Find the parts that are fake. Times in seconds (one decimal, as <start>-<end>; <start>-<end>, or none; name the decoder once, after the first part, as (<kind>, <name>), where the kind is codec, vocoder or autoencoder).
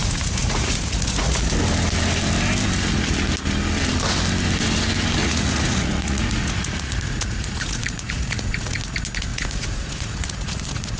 0.0-1.4 (vocoder, Vocos); 5.2-8.8; 9.3-11.0